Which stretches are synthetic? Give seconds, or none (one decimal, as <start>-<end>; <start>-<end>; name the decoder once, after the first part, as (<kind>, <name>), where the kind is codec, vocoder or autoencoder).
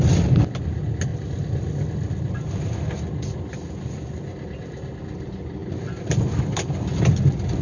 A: none